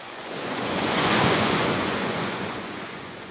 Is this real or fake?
fake